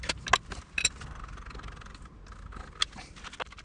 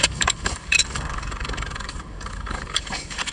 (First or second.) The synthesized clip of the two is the second